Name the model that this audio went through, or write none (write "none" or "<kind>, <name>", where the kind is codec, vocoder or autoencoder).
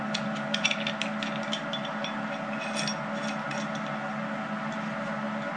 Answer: none